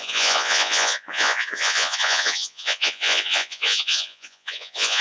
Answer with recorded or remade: remade